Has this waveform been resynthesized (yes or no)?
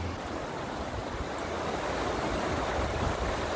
no